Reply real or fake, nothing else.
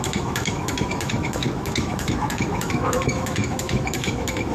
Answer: fake